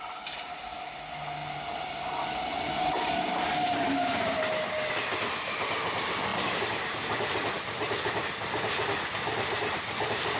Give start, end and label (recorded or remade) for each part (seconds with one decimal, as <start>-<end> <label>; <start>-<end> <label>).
0.0-10.4 recorded